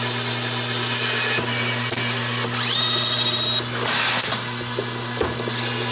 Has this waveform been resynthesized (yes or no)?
no